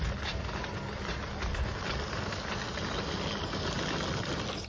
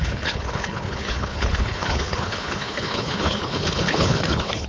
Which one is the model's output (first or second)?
second